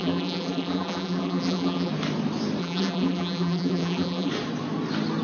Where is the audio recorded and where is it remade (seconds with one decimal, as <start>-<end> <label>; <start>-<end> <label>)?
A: 0.0-1.9 remade; 1.9-2.6 recorded; 2.6-4.3 remade; 4.3-5.2 recorded